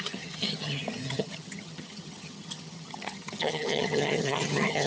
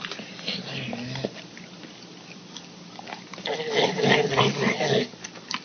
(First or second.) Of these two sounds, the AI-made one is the first